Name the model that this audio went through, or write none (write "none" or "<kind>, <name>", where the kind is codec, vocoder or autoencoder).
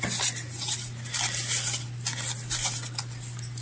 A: none